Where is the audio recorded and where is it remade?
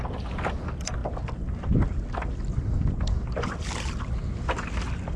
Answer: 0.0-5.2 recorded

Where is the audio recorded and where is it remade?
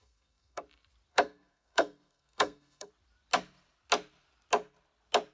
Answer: 0.0-0.6 remade; 0.6-1.1 recorded; 1.1-2.9 remade; 2.9-5.3 recorded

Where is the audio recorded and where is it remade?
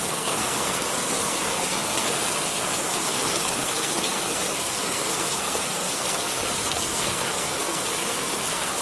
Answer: 0.0-8.8 remade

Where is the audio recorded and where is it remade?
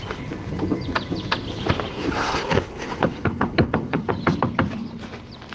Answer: 0.0-1.9 recorded; 1.9-4.1 remade; 4.1-5.5 recorded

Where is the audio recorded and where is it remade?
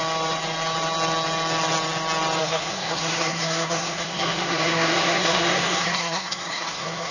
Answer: 0.0-2.4 recorded; 2.4-7.1 remade